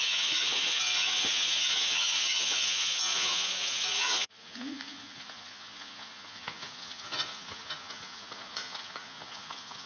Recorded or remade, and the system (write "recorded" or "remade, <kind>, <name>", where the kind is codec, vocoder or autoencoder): remade, vocoder, Vocos